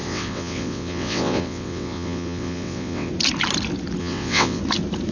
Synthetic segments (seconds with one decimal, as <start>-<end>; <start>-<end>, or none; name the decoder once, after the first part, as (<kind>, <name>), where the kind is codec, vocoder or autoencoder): 0.0-3.1 (vocoder, WaveNeXt); 4.0-4.6